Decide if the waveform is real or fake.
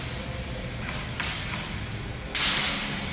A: real